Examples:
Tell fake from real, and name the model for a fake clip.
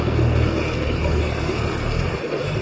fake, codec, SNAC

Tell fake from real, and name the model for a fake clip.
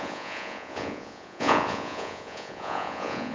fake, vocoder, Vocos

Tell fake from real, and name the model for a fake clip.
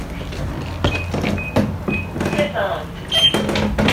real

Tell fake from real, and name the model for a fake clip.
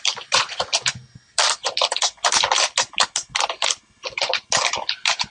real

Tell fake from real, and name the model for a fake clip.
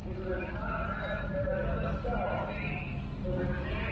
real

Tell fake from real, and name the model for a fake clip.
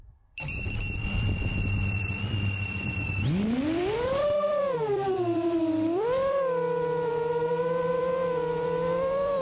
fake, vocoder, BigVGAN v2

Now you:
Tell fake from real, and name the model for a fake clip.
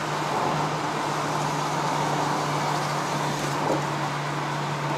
real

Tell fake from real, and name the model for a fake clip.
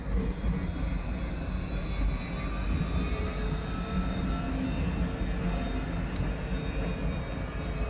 real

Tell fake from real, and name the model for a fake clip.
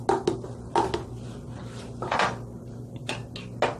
real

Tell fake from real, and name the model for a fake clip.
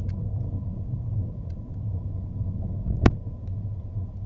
fake, vocoder, Vocos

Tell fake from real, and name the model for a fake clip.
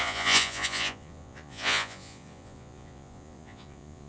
fake, vocoder, Vocos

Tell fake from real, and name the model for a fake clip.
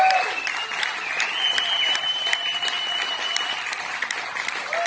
real